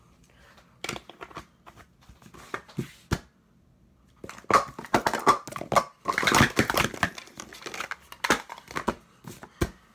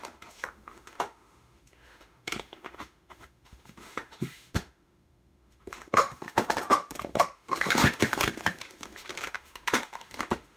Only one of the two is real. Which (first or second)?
first